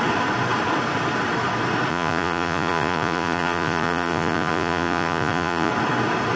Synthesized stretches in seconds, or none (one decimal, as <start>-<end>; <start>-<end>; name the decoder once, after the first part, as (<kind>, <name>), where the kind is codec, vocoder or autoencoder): 1.9-5.7 (vocoder, Vocos)